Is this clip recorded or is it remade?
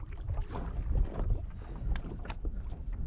recorded